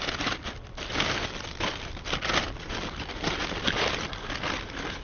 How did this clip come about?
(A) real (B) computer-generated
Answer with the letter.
A